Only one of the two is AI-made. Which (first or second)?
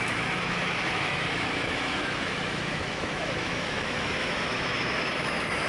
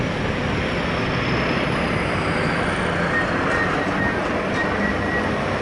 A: first